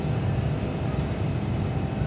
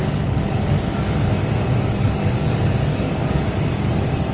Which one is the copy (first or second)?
second